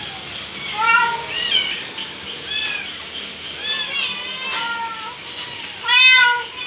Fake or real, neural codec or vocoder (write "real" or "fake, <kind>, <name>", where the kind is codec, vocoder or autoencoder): real